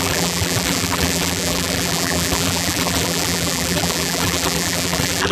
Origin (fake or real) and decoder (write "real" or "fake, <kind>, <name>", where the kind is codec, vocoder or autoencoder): fake, vocoder, BigVGAN v2